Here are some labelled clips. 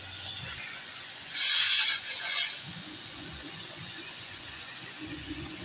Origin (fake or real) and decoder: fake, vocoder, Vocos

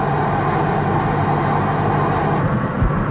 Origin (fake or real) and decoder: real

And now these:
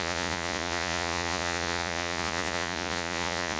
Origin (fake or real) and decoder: fake, vocoder, Vocos